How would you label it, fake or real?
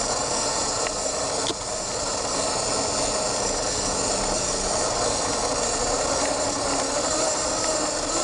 real